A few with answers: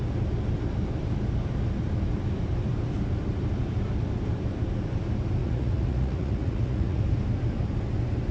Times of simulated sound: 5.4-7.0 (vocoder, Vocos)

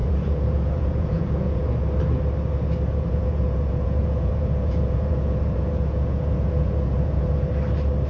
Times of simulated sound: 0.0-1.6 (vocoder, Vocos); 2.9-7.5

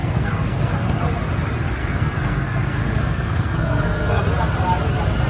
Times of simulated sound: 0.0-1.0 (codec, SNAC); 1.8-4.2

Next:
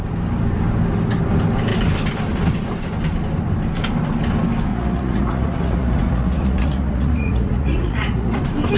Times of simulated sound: 4.7-8.4 (vocoder, Vocos)